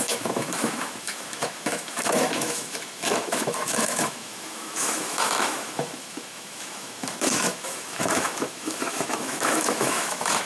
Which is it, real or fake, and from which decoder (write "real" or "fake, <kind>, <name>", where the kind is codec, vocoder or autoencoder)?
fake, autoencoder, DAC-VAE